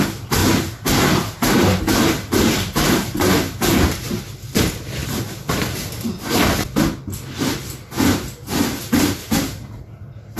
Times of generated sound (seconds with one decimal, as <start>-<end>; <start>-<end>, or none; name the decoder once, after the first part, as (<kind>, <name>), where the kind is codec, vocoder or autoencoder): 0.4-4.2 (vocoder, BigVGAN v2)

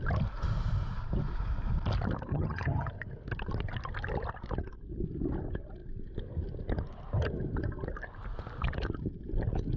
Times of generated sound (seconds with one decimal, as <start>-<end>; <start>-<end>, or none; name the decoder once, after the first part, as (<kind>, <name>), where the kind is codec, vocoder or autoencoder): 2.3-2.9 (vocoder, HiFi-GAN)

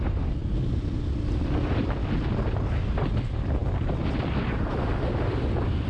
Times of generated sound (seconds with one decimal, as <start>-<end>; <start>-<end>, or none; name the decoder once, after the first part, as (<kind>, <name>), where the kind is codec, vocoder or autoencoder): none

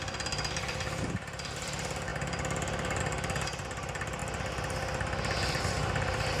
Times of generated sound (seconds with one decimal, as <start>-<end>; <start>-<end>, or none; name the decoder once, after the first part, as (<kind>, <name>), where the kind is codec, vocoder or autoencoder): none

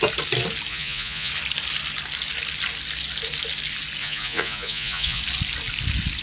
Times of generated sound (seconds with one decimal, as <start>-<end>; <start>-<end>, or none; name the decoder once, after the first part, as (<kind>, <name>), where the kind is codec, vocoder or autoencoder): 0.7-1.3 (vocoder, Vocos); 4.0-5.2

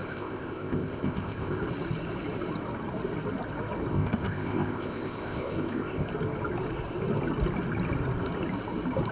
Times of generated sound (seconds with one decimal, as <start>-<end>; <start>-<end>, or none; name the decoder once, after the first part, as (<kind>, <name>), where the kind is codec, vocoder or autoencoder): 0.0-1.6 (codec, ZipCodec); 3.9-6.1